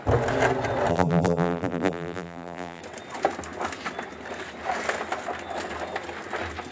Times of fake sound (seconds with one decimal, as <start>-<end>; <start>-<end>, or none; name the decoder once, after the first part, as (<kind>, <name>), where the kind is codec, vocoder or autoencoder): 0.9-2.8 (vocoder, BigVGAN v2)